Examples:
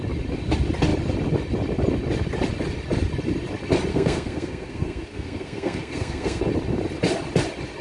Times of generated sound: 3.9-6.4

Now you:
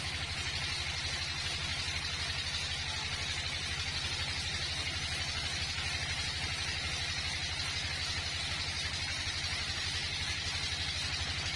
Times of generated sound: none

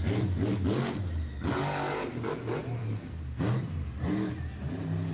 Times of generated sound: 2.8-3.4

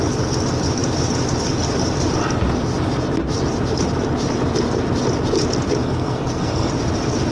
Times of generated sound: 5.8-6.7

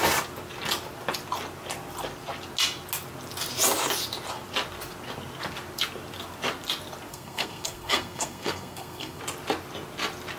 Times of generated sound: 7.1-9.2

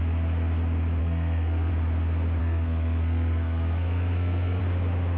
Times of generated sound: 1.0-1.7; 2.4-4.6

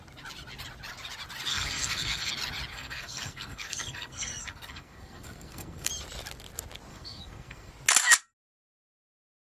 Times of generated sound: 1.5-2.3; 2.7-5.9; 6.9-7.7